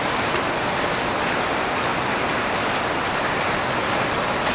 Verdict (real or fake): real